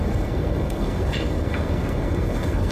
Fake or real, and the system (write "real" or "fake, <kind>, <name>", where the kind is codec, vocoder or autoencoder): fake, codec, SNAC